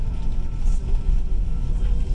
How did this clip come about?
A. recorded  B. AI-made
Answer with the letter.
A